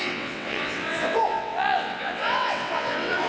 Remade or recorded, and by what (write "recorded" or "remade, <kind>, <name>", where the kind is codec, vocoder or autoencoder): remade, vocoder, WaveNeXt